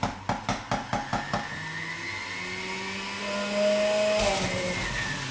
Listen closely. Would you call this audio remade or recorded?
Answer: recorded